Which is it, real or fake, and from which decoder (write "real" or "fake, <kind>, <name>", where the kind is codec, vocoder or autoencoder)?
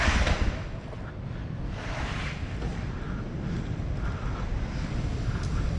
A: fake, vocoder, BigVGAN v2